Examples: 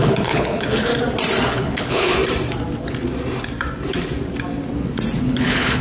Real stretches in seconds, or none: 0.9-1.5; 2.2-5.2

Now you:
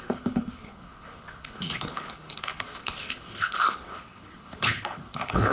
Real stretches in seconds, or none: none

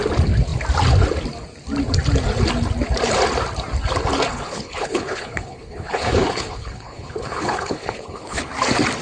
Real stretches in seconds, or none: 0.0-4.3; 8.5-9.0

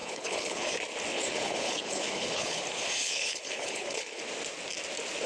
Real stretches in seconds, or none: 0.7-1.1; 2.6-3.0; 4.2-5.3

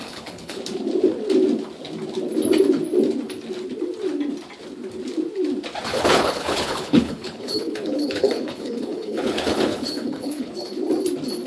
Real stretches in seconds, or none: 0.6-5.9; 10.5-11.5

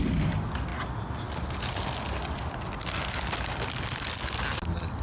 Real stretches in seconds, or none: 0.0-5.0

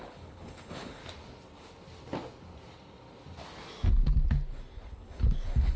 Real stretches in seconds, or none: 1.0-4.5

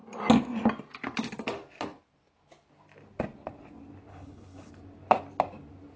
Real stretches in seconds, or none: 0.0-4.1; 4.7-6.0